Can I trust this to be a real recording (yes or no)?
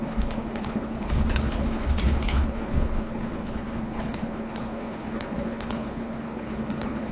no